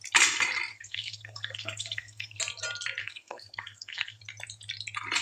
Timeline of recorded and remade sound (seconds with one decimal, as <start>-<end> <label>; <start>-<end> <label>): 0.0-0.7 recorded; 0.7-2.4 remade; 2.4-3.0 recorded; 3.0-4.2 remade; 4.2-5.2 recorded

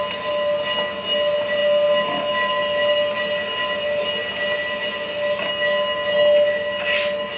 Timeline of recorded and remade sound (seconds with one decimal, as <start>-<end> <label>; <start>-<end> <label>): 0.0-7.4 recorded

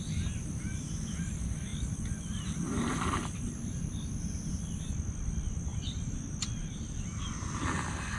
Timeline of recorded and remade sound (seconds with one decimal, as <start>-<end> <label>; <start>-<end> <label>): 0.0-8.2 recorded